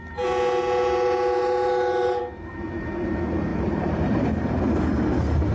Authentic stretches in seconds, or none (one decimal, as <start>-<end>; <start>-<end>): 0.0-1.4; 2.2-3.5; 4.8-5.5